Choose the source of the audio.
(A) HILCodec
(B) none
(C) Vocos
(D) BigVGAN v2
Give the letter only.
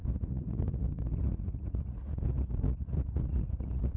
C